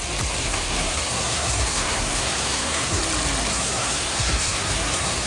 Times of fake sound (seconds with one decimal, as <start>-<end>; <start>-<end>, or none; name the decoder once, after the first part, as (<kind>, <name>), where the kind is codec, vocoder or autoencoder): 0.4-3.0 (codec, SNAC); 3.5-5.3